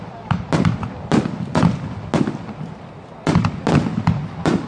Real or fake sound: real